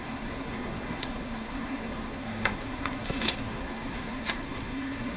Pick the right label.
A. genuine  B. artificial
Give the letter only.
B